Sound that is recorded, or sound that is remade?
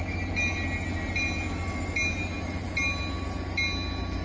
recorded